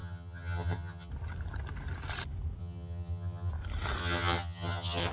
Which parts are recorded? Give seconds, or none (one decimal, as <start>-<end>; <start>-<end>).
1.1-2.6; 3.5-4.0